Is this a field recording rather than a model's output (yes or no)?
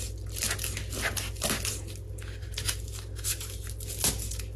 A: yes